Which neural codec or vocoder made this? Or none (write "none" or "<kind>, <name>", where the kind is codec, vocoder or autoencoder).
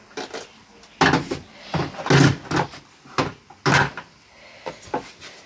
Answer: none